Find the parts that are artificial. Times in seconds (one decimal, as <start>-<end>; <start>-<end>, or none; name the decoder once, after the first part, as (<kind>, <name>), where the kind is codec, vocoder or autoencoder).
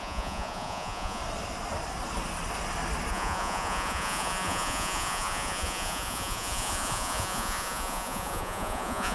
0.0-1.2 (vocoder, Vocos); 3.1-9.1